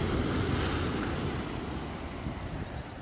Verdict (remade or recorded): recorded